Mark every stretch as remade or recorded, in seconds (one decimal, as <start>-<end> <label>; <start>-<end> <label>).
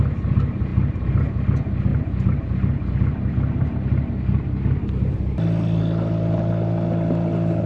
0.0-7.7 recorded